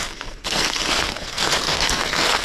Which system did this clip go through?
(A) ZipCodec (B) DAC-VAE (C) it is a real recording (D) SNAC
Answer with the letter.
D